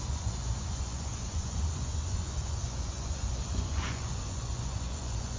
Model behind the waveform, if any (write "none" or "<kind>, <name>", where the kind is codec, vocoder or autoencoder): vocoder, Vocos